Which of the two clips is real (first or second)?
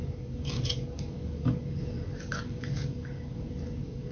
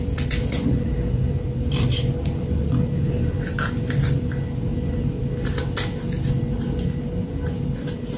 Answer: second